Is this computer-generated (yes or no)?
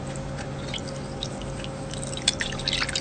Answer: no